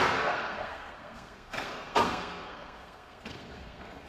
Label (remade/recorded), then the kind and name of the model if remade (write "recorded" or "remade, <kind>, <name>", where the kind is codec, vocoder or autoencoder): remade, codec, SNAC